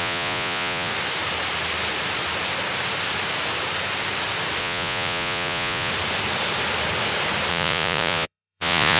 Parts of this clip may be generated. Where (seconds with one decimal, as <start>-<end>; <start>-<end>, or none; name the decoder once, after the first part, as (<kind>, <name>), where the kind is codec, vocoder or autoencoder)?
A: 0.0-0.9 (vocoder, Vocos); 4.6-5.9; 7.5-9.0